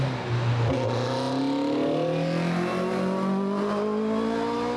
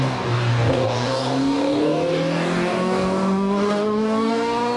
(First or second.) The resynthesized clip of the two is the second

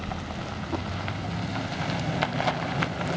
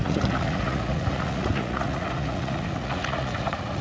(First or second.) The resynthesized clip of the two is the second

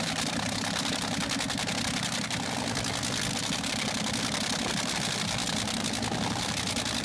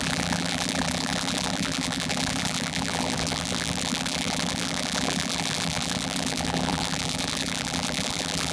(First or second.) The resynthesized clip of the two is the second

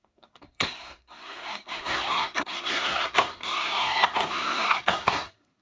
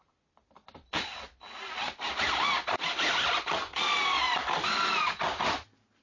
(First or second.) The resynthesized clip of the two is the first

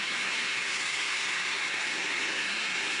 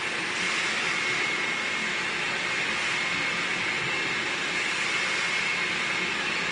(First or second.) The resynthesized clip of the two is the first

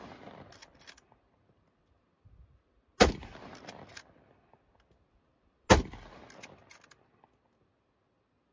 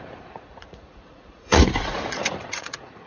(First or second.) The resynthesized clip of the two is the second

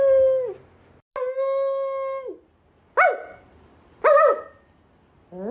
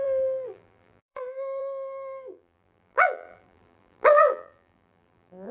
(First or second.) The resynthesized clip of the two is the second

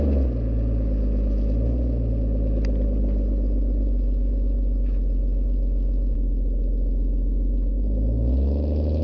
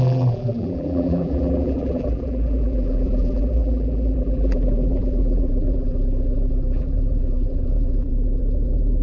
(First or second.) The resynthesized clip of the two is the second